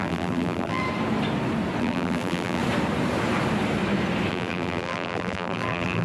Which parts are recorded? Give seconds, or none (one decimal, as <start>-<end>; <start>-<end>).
0.8-1.8; 2.6-4.3